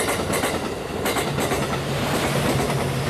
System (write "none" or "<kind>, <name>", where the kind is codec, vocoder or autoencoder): none